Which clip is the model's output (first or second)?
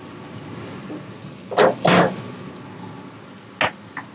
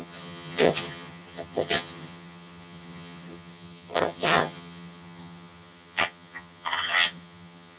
second